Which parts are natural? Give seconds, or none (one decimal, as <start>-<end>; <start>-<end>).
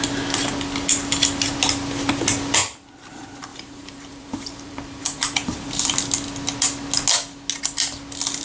0.0-3.5; 5.9-8.4